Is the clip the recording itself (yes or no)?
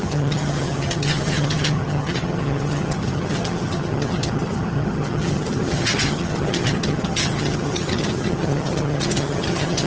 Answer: no